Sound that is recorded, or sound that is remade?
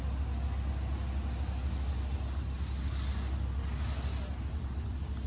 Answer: recorded